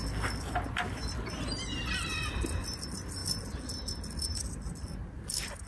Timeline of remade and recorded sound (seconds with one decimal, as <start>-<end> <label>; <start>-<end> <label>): 0.0-5.7 recorded